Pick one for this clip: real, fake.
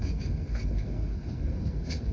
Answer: fake